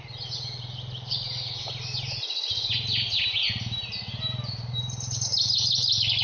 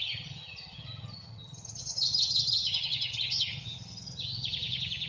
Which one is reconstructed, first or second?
second